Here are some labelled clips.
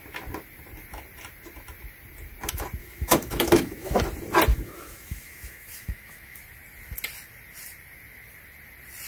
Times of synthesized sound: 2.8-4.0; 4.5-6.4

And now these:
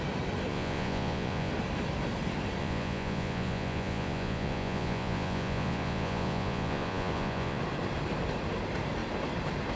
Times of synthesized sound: 0.5-1.5; 2.6-7.6

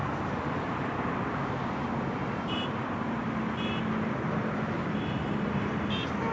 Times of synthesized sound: 0.7-6.3

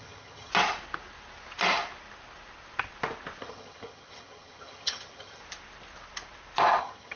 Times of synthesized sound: 0.0-0.5; 3.4-5.4; 6.8-7.2

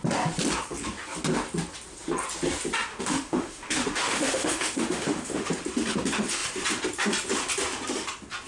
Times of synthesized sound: 2.9-5.5

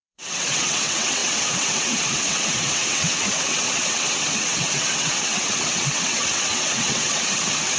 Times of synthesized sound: 0.0-7.8